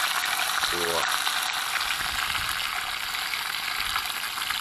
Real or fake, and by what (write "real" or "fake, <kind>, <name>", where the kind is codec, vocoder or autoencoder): real